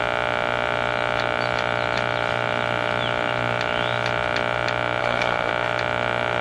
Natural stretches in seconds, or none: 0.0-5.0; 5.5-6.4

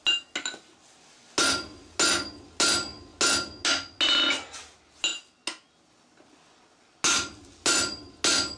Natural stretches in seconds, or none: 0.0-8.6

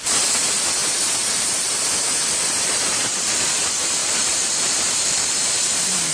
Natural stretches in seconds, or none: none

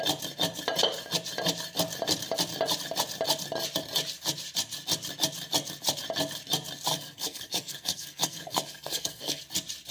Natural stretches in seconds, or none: 0.0-6.9; 9.4-9.9

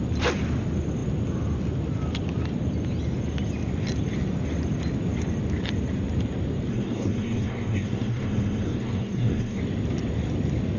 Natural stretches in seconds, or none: 0.0-6.7; 9.6-10.8

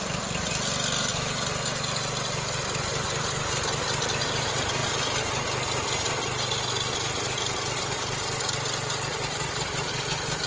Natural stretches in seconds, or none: 0.0-10.5

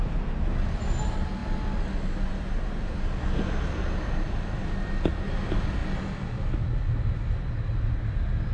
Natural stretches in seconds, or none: 0.0-8.5

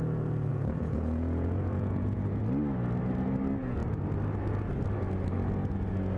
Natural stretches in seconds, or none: 0.0-0.5; 2.4-6.2